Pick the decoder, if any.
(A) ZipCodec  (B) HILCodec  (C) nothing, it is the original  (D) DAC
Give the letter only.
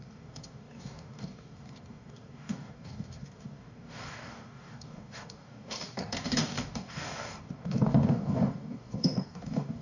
D